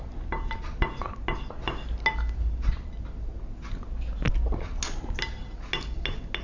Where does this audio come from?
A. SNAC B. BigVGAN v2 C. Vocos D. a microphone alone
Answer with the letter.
D